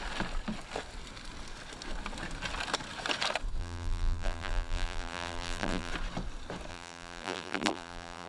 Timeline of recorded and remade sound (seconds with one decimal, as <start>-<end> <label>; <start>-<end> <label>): 0.0-3.6 recorded; 3.6-5.9 remade; 5.9-6.7 recorded; 6.7-8.3 remade